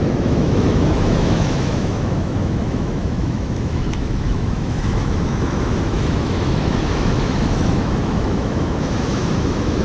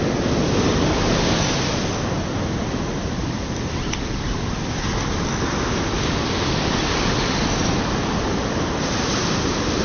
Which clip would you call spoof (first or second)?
first